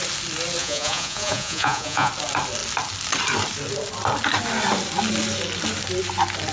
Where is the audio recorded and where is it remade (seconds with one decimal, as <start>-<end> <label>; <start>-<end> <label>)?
0.0-0.6 recorded; 0.6-2.1 remade; 2.1-6.5 recorded